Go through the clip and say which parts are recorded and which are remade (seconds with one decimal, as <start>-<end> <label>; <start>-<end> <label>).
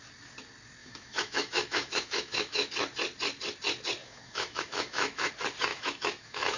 0.0-0.8 recorded; 0.8-2.7 remade; 2.7-4.0 recorded; 4.0-5.3 remade; 5.3-5.7 recorded; 5.7-6.6 remade